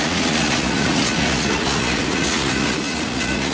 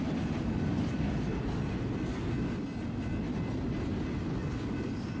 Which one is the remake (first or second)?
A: first